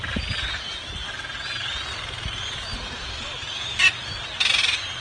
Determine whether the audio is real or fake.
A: real